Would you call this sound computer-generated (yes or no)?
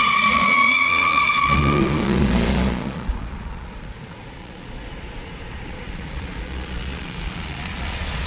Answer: yes